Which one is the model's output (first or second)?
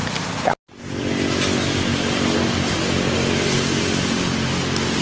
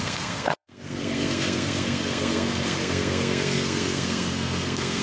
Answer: second